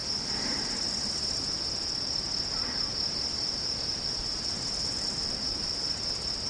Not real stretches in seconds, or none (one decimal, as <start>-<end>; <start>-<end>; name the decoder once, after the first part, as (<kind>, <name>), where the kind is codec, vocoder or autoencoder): none